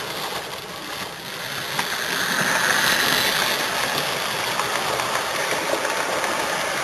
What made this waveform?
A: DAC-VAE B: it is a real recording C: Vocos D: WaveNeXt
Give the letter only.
B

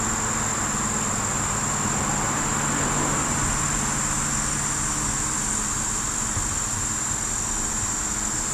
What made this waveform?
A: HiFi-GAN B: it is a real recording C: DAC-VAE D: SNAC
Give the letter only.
B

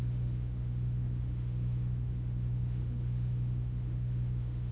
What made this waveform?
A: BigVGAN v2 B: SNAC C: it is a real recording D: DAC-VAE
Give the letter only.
D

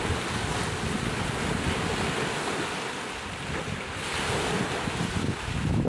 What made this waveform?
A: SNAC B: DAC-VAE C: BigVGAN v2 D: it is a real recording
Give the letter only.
D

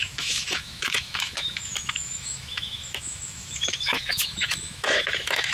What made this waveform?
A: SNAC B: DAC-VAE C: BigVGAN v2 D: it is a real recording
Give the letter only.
B